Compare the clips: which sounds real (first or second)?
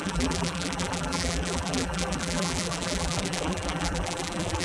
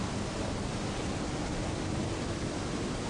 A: second